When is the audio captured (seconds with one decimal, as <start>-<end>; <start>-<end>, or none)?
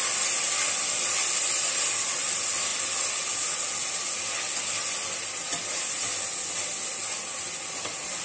0.0-8.2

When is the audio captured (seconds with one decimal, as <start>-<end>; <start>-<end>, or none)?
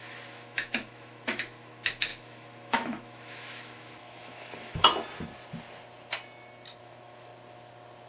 4.9-6.8; 7.3-8.1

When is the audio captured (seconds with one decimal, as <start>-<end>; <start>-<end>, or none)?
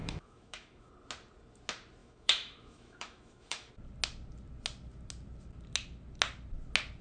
0.9-2.0; 3.7-7.0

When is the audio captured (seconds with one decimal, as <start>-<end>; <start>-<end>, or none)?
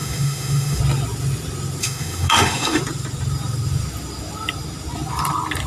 0.8-1.8; 2.8-5.7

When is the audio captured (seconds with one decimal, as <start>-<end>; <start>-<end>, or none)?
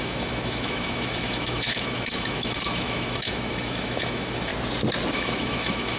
4.5-5.1